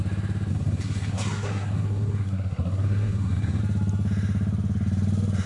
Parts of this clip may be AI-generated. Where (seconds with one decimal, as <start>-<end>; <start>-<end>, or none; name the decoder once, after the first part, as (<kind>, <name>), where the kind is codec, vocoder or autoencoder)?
0.5-3.6 (codec, SNAC)